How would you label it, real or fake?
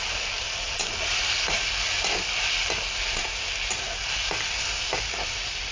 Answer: real